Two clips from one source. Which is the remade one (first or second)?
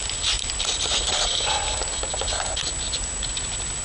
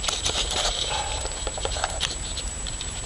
second